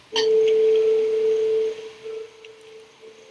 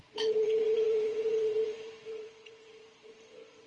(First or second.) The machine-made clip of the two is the second